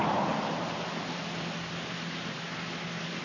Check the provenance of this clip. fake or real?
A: real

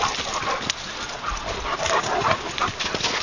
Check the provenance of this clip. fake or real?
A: real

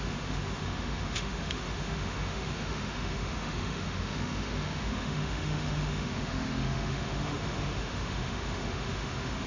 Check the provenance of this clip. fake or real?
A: fake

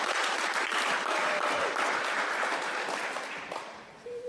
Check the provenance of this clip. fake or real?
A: fake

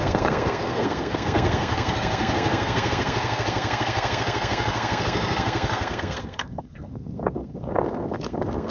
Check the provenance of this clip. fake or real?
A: fake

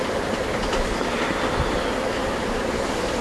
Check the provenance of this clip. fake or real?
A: real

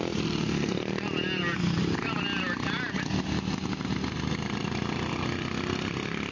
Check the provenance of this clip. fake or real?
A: real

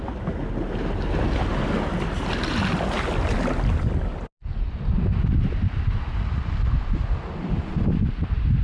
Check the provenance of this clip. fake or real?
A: real